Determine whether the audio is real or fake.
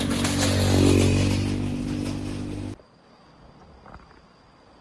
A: real